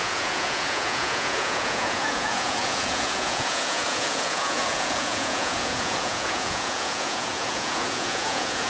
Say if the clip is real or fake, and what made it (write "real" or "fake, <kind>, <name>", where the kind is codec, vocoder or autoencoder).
fake, vocoder, Vocos